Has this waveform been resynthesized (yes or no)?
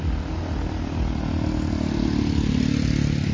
no